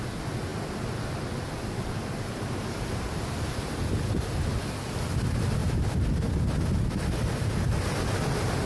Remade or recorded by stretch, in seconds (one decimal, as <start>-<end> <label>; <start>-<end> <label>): 0.0-0.5 remade; 0.5-1.4 recorded; 1.4-5.6 remade; 5.6-8.1 recorded; 8.1-8.6 remade